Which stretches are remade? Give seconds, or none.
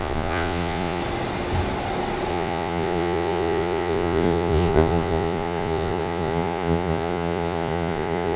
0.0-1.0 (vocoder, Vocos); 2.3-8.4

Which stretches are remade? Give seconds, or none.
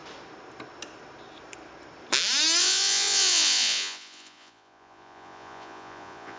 2.6-6.4 (vocoder, Vocos)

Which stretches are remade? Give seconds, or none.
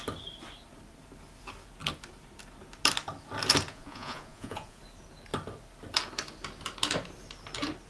3.7-4.8 (vocoder, Vocos)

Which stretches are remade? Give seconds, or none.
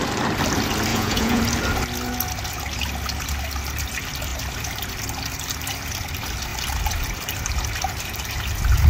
0.9-1.4 (vocoder, Vocos)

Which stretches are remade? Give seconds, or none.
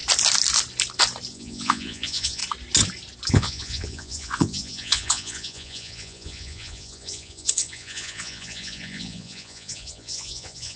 1.3-2.4 (vocoder, Vocos); 3.3-10.8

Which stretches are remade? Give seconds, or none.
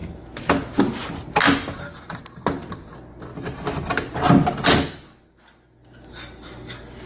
none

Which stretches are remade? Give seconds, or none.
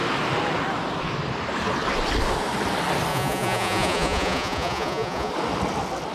3.1-5.3 (vocoder, Vocos)